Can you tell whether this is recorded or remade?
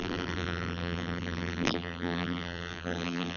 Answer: remade